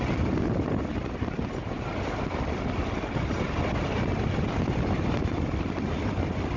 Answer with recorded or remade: recorded